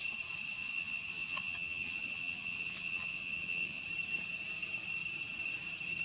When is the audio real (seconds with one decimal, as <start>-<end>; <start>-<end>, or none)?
0.0-0.5; 3.8-6.0